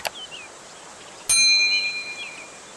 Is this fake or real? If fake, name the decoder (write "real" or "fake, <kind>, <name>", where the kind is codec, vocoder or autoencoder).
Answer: real